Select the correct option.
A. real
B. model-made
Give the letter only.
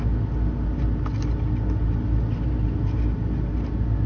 A